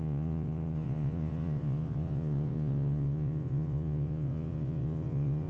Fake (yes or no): yes